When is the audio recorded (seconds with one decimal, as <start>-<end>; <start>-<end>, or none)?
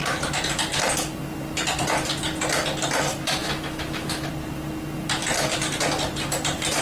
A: 0.0-3.4; 4.3-6.8